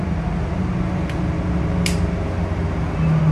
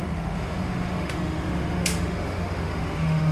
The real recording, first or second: first